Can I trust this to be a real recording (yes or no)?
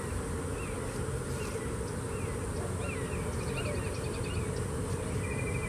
yes